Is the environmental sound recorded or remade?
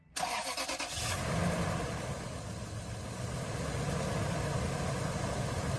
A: recorded